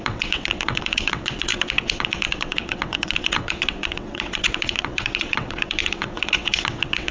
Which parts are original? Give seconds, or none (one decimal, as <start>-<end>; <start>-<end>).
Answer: none